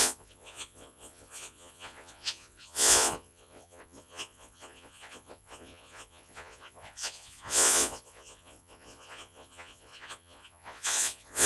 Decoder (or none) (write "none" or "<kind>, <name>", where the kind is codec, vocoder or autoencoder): vocoder, Vocos